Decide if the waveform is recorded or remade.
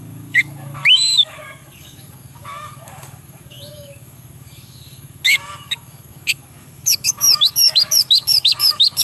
remade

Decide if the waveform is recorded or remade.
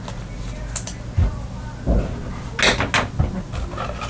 recorded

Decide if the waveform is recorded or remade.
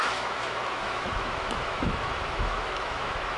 remade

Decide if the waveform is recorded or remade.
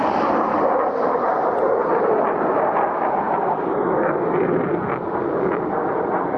recorded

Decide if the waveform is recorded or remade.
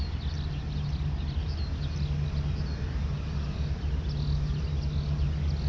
recorded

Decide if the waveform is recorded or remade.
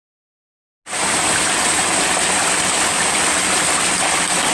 recorded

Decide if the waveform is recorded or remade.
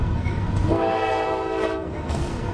remade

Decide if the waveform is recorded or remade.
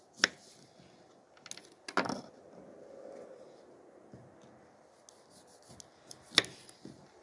recorded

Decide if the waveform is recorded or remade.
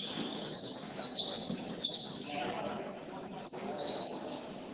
remade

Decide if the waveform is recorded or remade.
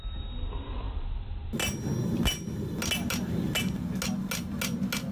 recorded